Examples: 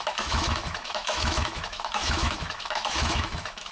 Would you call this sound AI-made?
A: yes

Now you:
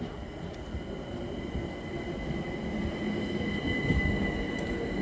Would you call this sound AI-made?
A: no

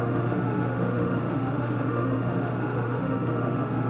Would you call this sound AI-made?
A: yes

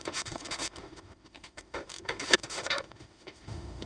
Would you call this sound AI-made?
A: yes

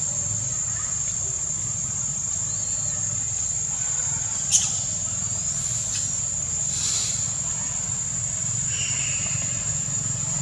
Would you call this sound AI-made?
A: no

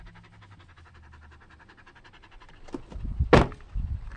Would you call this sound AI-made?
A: no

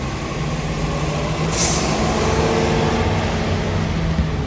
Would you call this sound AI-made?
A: no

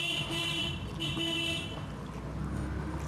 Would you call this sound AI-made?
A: no